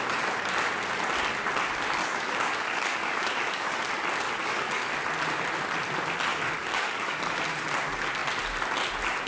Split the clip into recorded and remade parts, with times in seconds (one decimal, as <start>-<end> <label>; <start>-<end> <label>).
0.0-2.0 recorded; 2.0-3.7 remade; 3.7-4.4 recorded; 4.4-4.9 remade; 4.9-6.3 recorded; 6.3-7.2 remade; 7.2-9.3 recorded